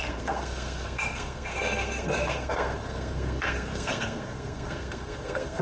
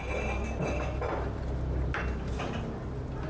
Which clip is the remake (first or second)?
first